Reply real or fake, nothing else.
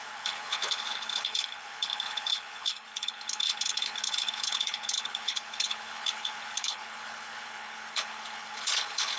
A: fake